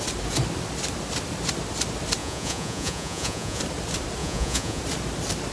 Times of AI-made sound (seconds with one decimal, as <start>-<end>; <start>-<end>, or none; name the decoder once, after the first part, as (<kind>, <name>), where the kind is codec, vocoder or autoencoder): 2.2-3.6 (vocoder, Vocos); 4.2-4.8

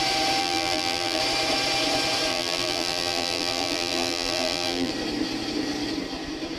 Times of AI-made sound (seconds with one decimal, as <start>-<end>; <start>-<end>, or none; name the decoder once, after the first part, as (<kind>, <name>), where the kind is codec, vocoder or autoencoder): 0.4-1.2 (vocoder, BigVGAN v2); 2.3-4.9